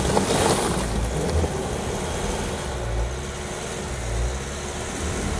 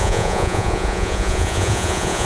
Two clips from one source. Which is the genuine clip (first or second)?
first